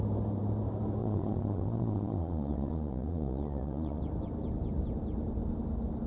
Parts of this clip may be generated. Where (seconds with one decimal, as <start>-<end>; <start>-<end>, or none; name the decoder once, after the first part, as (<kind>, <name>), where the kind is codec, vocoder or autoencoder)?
1.0-4.0 (vocoder, Vocos)

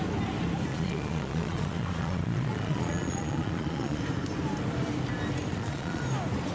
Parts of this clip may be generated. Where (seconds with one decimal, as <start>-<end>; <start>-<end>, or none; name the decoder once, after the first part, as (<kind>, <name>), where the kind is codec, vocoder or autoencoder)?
0.7-4.0 (vocoder, Vocos); 5.5-6.0

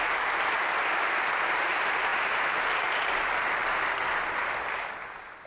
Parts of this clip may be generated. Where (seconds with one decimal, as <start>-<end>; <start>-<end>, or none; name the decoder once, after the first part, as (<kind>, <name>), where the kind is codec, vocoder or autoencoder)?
none

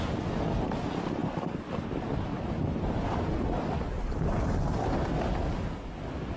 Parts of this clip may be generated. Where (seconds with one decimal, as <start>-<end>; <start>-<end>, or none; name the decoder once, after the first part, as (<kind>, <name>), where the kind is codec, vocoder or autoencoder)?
none

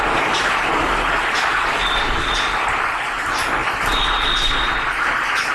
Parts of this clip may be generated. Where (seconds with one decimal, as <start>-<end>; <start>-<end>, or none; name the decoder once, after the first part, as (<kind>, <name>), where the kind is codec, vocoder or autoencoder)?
none

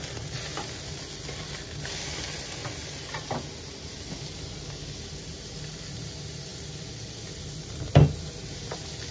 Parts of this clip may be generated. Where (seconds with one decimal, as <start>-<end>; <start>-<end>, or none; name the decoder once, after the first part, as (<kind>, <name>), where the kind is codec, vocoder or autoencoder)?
none

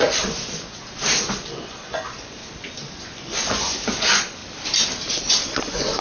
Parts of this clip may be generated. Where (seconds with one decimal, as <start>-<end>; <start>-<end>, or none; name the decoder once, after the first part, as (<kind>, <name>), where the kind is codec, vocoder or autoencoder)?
0.0-0.8 (vocoder, Vocos); 1.5-2.4; 3.0-4.4; 5.1-6.0